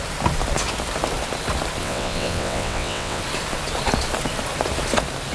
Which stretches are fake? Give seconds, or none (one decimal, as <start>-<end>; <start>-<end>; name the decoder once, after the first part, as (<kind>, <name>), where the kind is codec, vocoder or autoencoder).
1.8-3.2 (vocoder, WaveNeXt)